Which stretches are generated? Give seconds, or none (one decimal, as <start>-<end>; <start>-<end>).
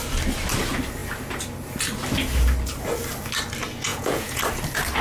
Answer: 3.9-4.4